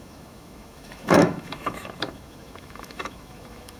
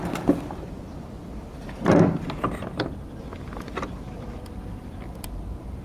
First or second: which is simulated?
first